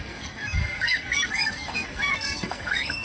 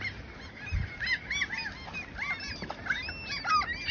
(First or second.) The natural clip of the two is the second